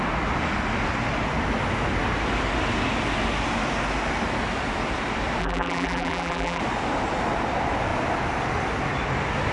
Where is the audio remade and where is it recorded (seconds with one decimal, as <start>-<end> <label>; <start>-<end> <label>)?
0.0-5.4 recorded; 5.4-6.6 remade; 6.6-9.5 recorded